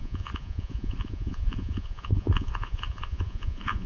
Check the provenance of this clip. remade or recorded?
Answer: remade